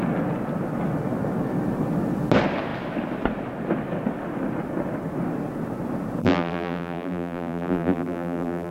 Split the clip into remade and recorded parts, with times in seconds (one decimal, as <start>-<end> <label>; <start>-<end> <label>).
0.0-6.2 recorded; 6.2-8.7 remade